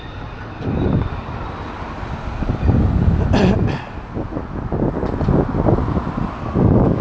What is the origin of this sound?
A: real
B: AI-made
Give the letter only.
A